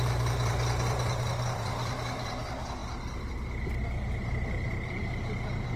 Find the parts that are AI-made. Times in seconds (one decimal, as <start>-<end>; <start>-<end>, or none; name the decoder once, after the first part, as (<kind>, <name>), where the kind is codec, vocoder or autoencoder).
0.0-5.8 (vocoder, BigVGAN v2)